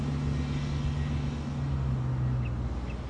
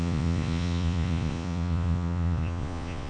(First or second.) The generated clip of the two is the second